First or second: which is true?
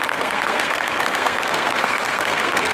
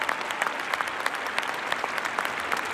second